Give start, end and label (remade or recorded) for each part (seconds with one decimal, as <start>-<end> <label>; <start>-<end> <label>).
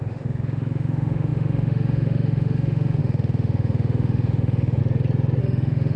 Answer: 0.0-4.8 remade; 4.8-5.4 recorded; 5.4-6.0 remade